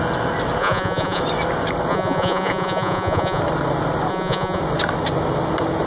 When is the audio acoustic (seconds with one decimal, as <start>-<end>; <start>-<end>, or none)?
0.0-0.6; 1.2-1.9; 3.4-4.1; 4.6-5.9